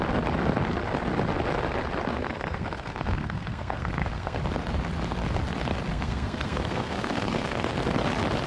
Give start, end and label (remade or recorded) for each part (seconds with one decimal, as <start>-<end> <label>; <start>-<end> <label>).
0.0-2.1 recorded; 2.1-4.4 remade; 4.4-5.9 recorded; 5.9-7.7 remade; 7.7-8.5 recorded

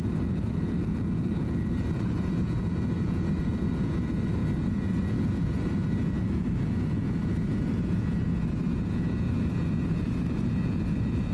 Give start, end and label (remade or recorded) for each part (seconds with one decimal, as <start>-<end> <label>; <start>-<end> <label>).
0.0-11.3 remade

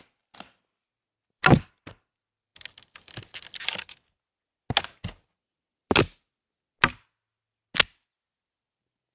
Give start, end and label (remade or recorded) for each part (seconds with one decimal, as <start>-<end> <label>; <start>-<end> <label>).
0.0-9.1 recorded

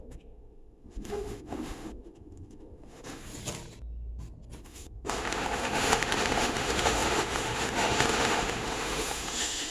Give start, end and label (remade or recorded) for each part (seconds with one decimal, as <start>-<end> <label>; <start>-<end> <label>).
0.0-3.2 remade; 3.2-4.6 recorded; 4.6-9.7 remade

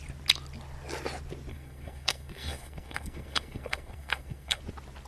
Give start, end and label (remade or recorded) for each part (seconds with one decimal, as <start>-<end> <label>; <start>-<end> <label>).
0.0-1.5 recorded; 1.5-4.6 remade; 4.6-5.1 recorded

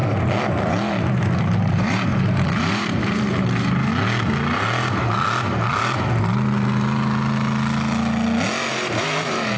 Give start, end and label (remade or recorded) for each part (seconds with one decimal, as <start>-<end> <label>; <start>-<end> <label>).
0.0-1.4 recorded; 1.4-3.9 remade; 3.9-8.7 recorded; 8.7-9.6 remade

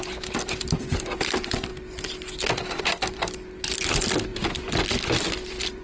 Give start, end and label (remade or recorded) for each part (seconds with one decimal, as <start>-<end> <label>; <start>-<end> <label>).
0.0-1.7 remade; 1.7-2.8 recorded; 2.8-5.8 remade

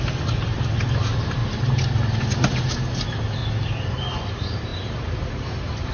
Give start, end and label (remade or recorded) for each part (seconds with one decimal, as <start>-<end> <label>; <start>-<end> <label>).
0.0-1.4 remade; 1.4-2.2 recorded; 2.2-3.4 remade; 3.4-4.3 recorded; 4.3-5.9 remade